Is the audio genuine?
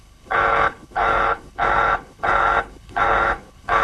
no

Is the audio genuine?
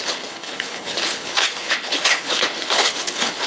no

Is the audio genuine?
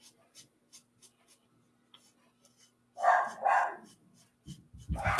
yes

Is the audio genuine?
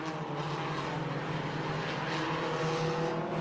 yes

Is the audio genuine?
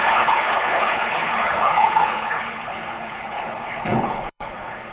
no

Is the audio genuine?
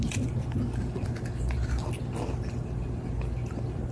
yes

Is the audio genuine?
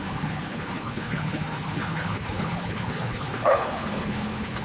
no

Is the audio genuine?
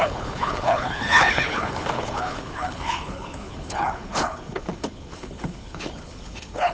no